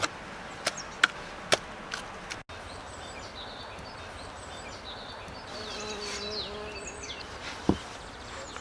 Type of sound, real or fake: real